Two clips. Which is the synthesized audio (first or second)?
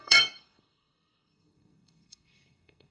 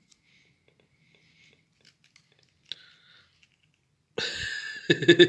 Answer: first